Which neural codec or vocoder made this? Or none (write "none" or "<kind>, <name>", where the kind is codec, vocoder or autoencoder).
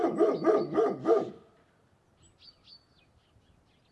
none